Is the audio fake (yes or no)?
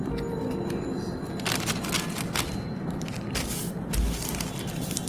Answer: no